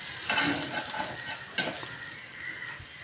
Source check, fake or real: real